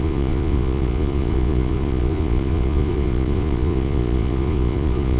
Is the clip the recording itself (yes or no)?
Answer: no